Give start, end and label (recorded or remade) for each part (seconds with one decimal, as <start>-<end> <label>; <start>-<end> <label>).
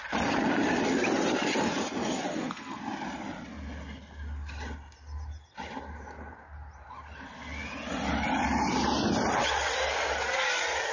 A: 0.0-2.3 recorded; 2.3-2.8 remade; 2.8-10.9 recorded